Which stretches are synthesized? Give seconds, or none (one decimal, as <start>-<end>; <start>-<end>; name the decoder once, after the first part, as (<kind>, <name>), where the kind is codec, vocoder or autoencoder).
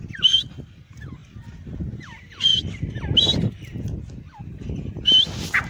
none